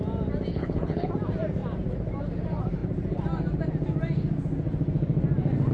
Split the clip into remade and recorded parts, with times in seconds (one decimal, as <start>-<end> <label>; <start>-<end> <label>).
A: 0.0-0.5 recorded; 0.5-1.1 remade; 1.1-5.7 recorded